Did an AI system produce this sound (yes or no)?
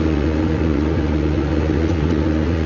yes